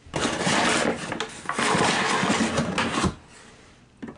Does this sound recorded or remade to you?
recorded